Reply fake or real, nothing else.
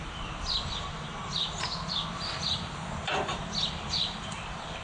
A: real